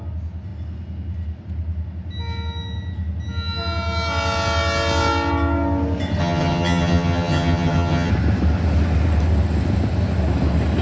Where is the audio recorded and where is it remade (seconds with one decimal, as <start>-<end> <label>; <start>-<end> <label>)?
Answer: 0.0-6.2 recorded; 6.2-8.1 remade; 8.1-10.8 recorded